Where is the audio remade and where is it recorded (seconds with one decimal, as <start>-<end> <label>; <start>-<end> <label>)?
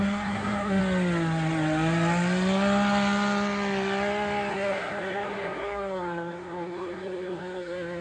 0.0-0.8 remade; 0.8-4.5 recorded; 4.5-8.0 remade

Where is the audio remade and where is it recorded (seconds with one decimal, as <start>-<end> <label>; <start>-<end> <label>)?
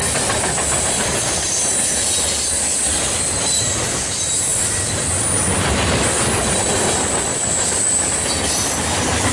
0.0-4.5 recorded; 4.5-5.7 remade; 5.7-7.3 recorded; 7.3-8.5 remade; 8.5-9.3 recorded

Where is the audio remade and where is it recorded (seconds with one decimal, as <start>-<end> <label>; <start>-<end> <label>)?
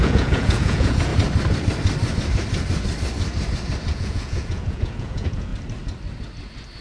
0.0-1.1 remade; 1.1-3.9 recorded; 3.9-5.5 remade; 5.5-6.8 recorded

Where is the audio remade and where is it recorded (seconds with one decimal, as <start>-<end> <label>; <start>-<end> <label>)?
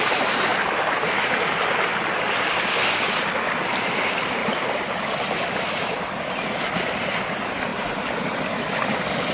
0.0-4.4 recorded; 4.4-5.1 remade; 5.1-7.7 recorded; 7.7-8.7 remade; 8.7-9.3 recorded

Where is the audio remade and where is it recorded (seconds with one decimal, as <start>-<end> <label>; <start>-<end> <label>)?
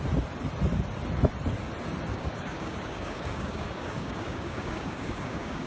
0.0-2.1 recorded; 2.1-5.7 remade